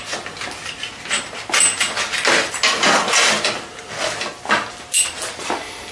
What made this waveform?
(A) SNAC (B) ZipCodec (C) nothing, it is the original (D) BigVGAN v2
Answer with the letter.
C